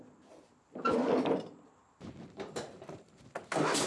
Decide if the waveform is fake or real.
fake